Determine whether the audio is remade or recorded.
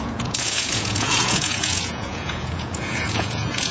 remade